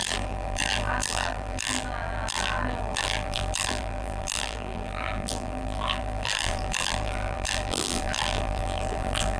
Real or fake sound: fake